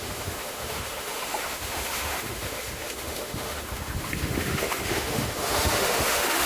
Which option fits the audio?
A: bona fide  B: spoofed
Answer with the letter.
B